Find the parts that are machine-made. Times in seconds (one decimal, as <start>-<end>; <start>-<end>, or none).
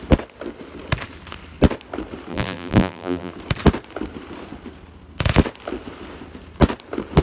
2.3-3.3